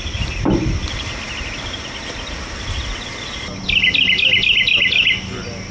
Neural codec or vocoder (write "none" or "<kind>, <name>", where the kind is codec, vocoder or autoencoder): none